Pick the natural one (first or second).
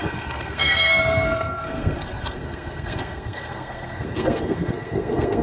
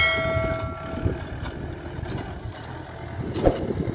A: second